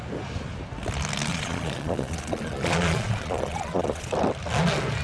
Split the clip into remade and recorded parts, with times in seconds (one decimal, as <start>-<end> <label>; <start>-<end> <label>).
0.0-1.3 recorded; 1.3-4.1 remade; 4.1-5.0 recorded